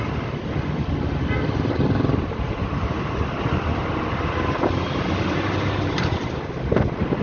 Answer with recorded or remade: recorded